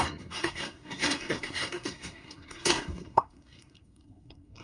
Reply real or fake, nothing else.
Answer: fake